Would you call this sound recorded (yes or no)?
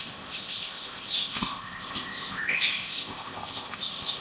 no